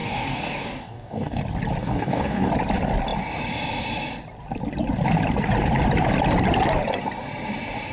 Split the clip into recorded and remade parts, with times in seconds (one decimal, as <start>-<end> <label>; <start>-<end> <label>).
0.0-1.4 remade; 1.4-1.8 recorded; 1.8-2.5 remade; 2.5-7.9 recorded